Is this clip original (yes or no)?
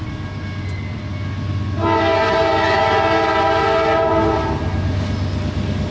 yes